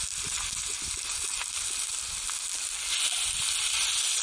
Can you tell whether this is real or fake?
real